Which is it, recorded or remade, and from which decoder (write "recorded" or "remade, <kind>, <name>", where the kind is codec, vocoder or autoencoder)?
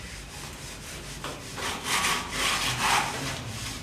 recorded